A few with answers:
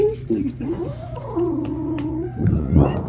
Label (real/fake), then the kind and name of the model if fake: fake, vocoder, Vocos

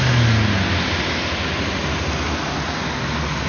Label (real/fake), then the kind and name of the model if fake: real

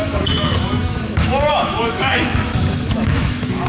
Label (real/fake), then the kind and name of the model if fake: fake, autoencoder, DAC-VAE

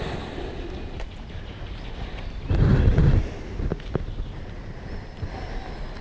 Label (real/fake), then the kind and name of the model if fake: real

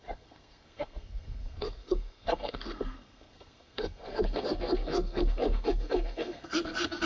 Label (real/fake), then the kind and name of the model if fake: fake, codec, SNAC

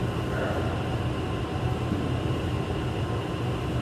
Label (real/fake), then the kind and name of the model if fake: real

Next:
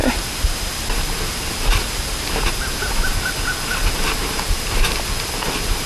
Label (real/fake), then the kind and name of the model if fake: real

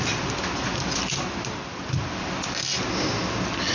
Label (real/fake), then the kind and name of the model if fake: real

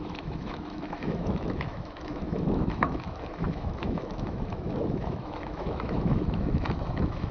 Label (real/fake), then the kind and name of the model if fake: fake, autoencoder, DAC-VAE